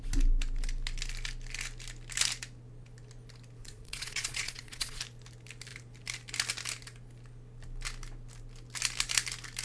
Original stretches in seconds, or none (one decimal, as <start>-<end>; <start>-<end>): 0.0-3.6; 5.0-9.6